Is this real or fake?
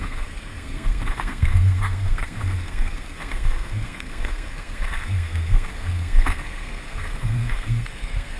fake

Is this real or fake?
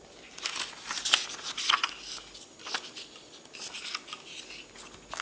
real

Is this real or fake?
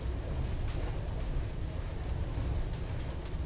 real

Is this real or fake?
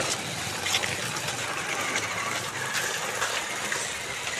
real